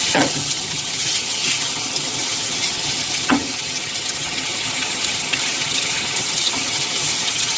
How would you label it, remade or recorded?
remade